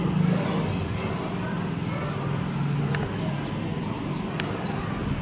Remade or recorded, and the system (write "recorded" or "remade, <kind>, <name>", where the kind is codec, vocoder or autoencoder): recorded